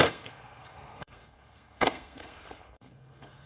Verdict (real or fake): fake